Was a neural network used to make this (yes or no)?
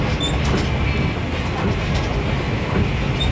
no